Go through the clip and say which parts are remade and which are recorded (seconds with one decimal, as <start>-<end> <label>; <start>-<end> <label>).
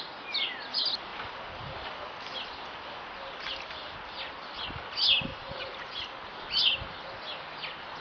0.0-5.3 recorded; 5.3-6.1 remade; 6.1-8.0 recorded